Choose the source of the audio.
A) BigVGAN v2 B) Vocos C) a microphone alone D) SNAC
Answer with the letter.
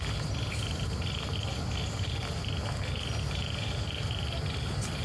C